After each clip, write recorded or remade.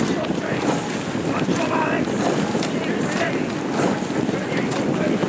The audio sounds recorded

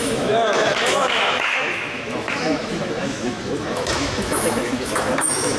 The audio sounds remade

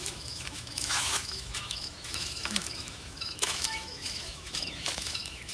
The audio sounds remade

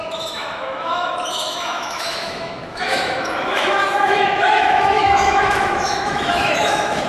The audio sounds remade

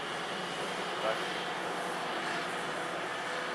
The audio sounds recorded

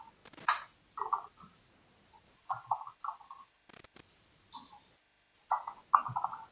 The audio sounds recorded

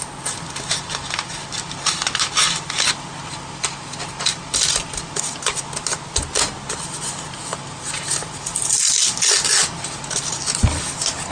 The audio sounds recorded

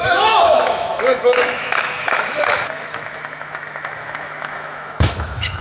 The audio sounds remade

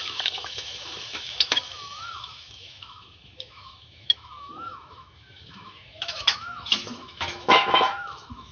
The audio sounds remade